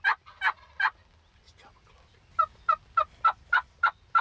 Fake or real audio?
real